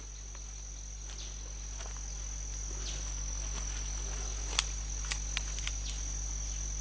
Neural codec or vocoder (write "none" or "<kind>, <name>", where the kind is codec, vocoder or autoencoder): none